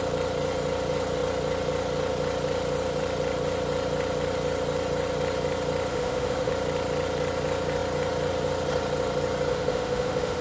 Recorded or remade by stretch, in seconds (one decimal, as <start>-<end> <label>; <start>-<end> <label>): 0.0-5.9 recorded; 5.9-6.5 remade; 6.5-9.5 recorded; 9.5-10.4 remade